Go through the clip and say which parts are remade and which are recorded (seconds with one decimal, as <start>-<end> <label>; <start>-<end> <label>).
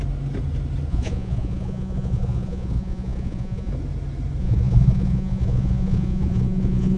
0.0-0.9 recorded; 0.9-3.7 remade; 3.7-4.4 recorded; 4.4-7.0 remade